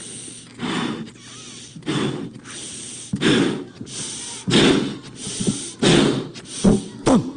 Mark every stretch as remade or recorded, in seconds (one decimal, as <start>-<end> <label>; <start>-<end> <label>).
0.0-7.4 recorded